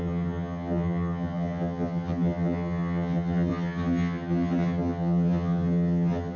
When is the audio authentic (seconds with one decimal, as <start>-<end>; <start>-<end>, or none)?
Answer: none